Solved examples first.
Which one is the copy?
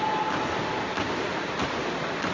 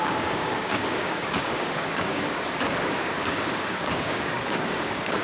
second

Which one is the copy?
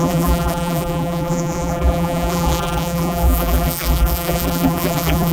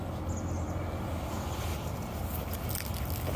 first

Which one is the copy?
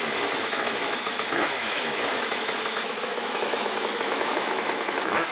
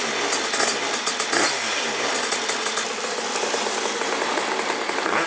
first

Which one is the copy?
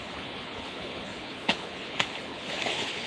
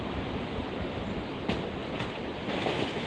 first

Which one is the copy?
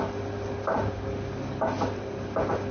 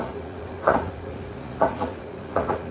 second